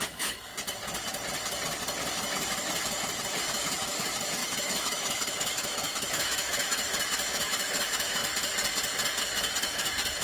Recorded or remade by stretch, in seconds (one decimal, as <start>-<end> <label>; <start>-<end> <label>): 0.0-0.5 remade; 0.5-3.4 recorded; 3.4-8.2 remade; 8.2-9.2 recorded; 9.2-10.2 remade